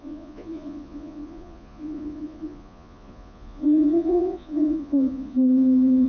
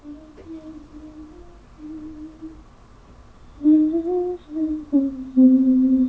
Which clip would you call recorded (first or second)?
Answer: second